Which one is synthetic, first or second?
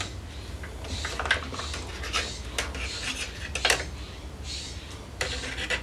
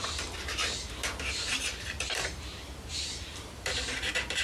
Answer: second